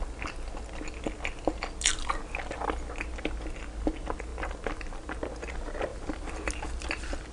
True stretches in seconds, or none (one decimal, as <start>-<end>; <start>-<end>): 0.0-4.3; 5.1-5.9; 6.5-7.3